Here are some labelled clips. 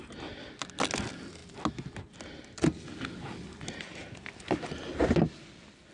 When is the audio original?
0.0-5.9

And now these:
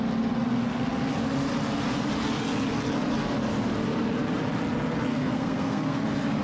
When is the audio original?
0.0-5.1; 6.0-6.4

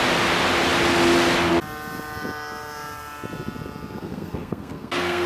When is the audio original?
0.0-4.0

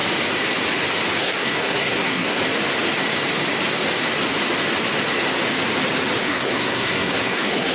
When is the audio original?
0.0-1.2; 2.4-6.2

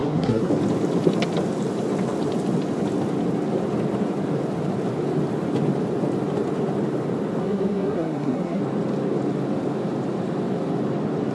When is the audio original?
0.5-7.4; 8.6-11.3

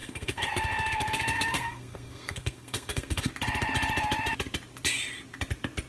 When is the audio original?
3.3-5.9

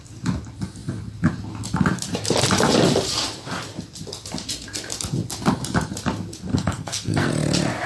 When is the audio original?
0.0-6.5; 7.3-7.9